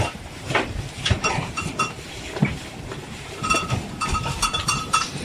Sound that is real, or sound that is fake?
fake